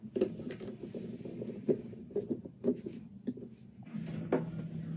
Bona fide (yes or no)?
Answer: yes